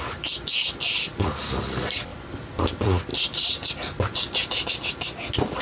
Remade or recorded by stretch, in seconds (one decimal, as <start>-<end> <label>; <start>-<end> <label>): 0.0-5.6 recorded